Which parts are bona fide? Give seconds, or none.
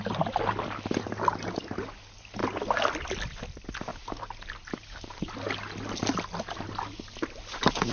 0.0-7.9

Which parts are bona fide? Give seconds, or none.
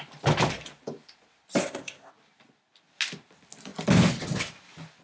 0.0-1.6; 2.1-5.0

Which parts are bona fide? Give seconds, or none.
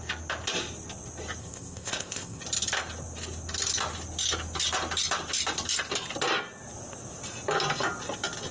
0.0-1.4; 2.4-8.5